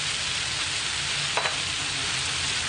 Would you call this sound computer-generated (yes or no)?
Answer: no